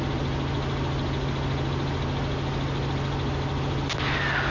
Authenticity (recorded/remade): recorded